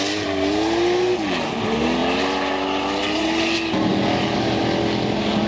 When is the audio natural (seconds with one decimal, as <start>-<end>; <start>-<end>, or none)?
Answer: 0.0-5.5